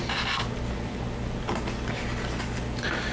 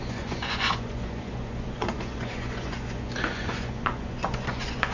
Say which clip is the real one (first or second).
first